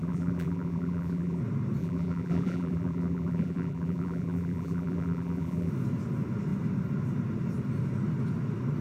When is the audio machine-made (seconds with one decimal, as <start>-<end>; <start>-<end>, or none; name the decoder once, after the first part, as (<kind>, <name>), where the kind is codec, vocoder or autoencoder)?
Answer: 0.0-1.4 (vocoder, BigVGAN v2); 1.8-5.7